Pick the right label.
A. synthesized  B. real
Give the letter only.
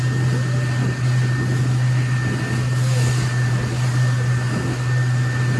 B